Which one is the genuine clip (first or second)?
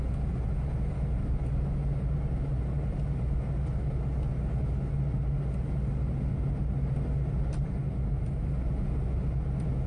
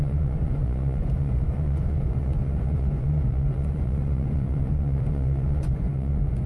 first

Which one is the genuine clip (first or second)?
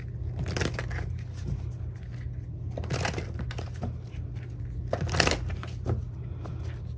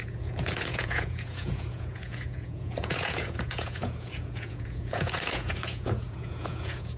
first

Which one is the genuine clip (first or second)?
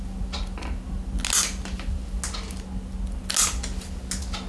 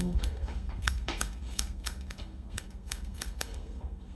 first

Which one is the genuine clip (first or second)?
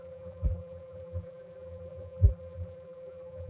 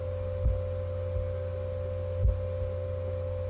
second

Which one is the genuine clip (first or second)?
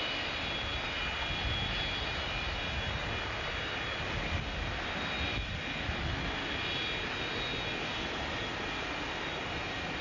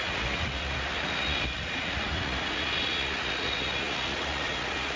first